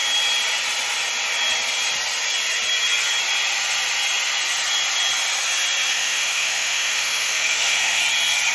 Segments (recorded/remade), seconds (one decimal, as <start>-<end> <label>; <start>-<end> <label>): 0.0-5.9 recorded; 5.9-8.0 remade; 8.0-8.5 recorded